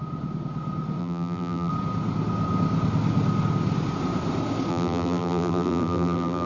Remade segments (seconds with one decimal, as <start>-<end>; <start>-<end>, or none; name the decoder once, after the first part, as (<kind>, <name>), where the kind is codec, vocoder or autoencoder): 1.0-1.7 (vocoder, BigVGAN v2); 4.7-6.5